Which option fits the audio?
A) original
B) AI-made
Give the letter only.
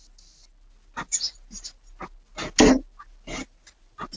A